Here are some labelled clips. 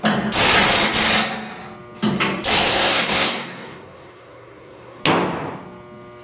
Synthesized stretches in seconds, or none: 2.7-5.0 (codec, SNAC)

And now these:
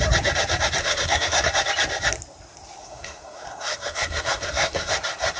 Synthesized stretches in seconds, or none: 0.8-1.5 (codec, SNAC); 2.8-4.9

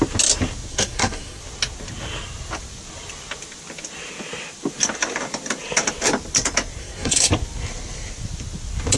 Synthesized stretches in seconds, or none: 0.7-1.4 (codec, SNAC); 6.8-7.3

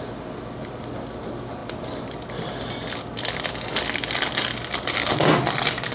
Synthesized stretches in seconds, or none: none

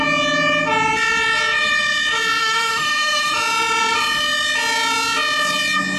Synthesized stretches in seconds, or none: 2.4-3.3 (autoencoder, DAC-VAE)